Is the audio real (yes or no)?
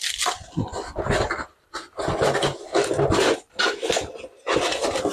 yes